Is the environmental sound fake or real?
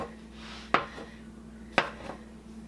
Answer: real